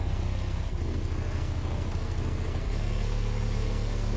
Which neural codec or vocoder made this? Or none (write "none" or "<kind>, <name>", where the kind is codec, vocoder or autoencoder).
codec, SNAC